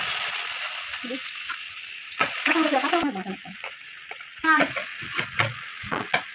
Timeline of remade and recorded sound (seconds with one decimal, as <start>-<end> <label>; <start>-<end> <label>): 0.0-6.3 remade